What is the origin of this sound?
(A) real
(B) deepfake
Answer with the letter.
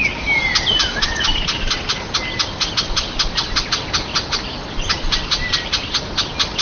A